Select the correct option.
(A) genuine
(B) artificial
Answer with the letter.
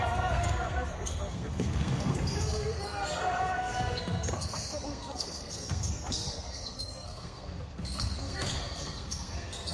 B